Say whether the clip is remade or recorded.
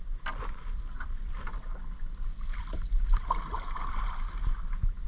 recorded